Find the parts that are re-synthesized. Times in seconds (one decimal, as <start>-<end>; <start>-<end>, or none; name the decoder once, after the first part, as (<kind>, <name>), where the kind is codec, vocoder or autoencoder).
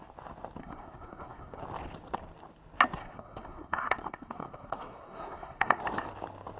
0.6-1.6 (codec, SNAC); 3.0-5.8